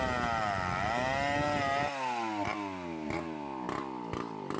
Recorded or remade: recorded